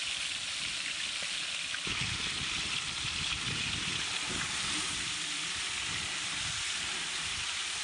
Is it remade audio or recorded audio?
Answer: recorded